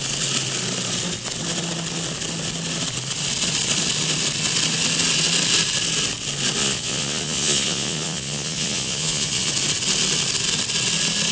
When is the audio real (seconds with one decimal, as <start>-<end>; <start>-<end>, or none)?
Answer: 0.0-6.6; 9.5-11.3